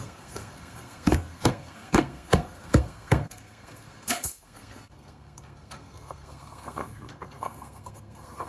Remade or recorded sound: remade